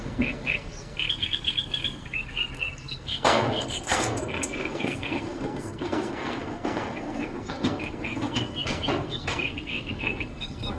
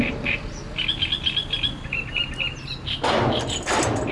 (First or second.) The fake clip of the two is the first